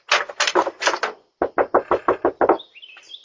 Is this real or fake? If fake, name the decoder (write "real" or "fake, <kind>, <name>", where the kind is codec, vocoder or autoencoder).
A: real